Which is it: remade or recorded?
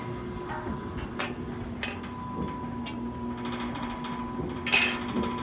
recorded